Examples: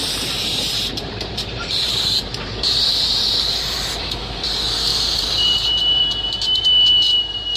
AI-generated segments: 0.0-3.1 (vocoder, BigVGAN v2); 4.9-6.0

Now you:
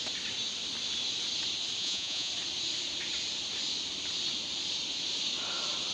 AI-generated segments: 1.8-2.3 (vocoder, Vocos)

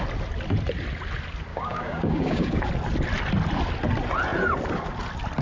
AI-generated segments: 1.5-2.6 (codec, DAC)

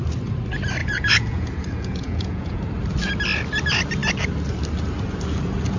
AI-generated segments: 0.8-2.6 (vocoder, Vocos)

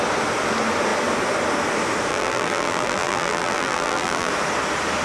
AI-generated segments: 2.1-4.3 (vocoder, BigVGAN v2)